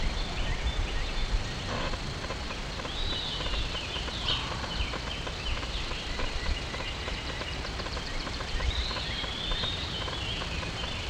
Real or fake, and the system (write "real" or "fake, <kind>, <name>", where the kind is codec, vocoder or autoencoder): fake, vocoder, BigVGAN v2